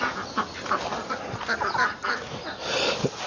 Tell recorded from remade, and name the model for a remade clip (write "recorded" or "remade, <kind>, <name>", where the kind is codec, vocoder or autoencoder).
recorded